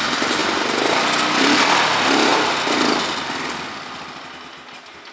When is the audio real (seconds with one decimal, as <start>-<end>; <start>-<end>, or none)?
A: 0.0-5.1